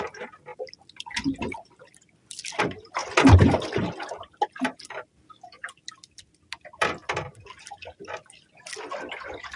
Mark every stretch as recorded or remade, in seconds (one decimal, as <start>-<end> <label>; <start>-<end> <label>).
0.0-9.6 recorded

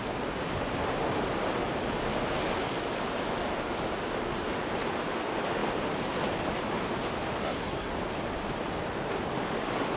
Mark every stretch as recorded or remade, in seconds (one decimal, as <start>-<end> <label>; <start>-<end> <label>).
0.0-7.4 recorded; 7.4-7.9 remade; 7.9-10.0 recorded

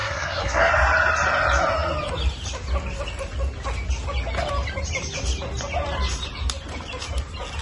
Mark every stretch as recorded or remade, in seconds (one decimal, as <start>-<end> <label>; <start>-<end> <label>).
0.0-0.7 remade; 0.7-7.6 recorded

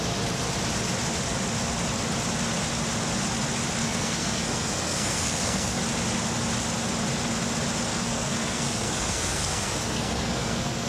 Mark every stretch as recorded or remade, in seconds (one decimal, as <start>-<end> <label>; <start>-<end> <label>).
0.0-3.8 recorded; 3.8-5.8 remade; 5.8-7.9 recorded; 7.9-10.9 remade

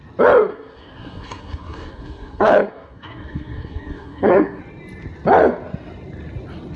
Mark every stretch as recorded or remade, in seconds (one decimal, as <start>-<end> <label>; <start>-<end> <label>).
0.0-0.5 recorded; 0.5-4.6 remade; 4.6-6.8 recorded